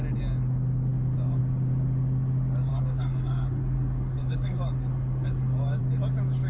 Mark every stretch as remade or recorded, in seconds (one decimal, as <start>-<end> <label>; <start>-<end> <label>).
0.0-2.7 recorded; 2.7-5.8 remade; 5.8-6.5 recorded